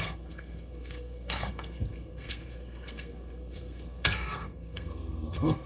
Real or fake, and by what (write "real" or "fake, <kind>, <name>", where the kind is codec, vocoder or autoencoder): fake, codec, SNAC